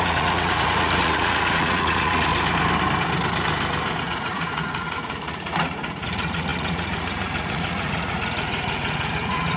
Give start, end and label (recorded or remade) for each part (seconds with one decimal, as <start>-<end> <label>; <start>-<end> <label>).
0.0-2.3 remade; 2.3-4.0 recorded; 4.0-9.6 remade